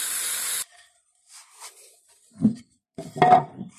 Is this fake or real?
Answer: fake